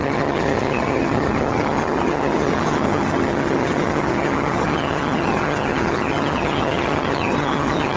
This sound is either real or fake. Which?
fake